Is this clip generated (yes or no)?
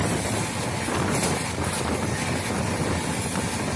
no